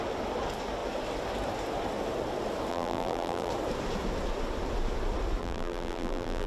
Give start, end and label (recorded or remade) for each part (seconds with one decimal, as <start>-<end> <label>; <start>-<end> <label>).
0.0-2.7 recorded; 2.7-3.5 remade; 3.5-5.4 recorded; 5.4-6.5 remade